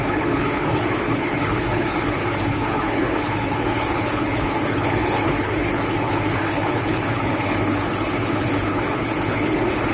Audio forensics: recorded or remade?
remade